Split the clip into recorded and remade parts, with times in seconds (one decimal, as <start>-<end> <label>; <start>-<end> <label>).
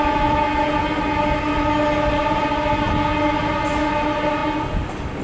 0.0-5.2 recorded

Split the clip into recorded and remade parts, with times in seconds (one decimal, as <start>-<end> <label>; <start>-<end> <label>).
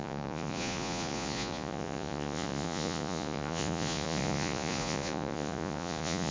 0.0-6.3 remade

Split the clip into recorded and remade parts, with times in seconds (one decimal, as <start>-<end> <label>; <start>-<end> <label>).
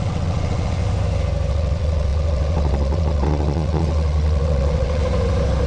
0.0-0.8 remade; 0.8-1.5 recorded; 1.5-5.0 remade; 5.0-5.7 recorded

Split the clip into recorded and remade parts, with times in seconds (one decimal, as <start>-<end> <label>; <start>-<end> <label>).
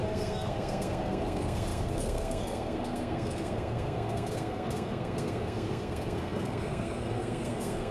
0.0-7.9 remade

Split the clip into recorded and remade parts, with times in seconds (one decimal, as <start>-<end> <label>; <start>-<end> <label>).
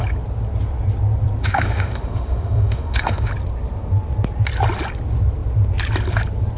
0.0-1.4 recorded; 1.4-3.3 remade; 3.3-6.6 recorded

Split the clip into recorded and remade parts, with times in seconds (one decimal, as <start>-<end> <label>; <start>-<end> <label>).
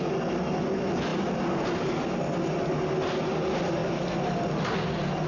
0.0-5.3 recorded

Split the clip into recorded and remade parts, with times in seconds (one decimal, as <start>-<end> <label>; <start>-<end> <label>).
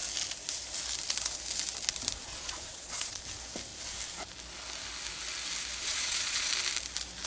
0.0-2.3 recorded; 2.3-3.2 remade; 3.2-5.8 recorded; 5.8-6.5 remade; 6.5-7.3 recorded